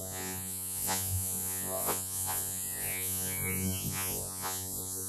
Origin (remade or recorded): remade